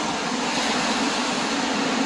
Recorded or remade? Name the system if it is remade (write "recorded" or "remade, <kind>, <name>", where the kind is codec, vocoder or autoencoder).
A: recorded